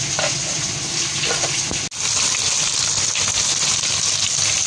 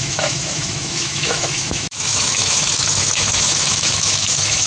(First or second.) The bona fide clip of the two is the first